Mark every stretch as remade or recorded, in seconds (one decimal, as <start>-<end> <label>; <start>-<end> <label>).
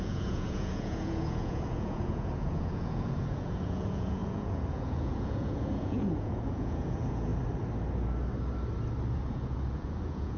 0.0-7.3 remade; 7.3-9.3 recorded; 9.3-10.4 remade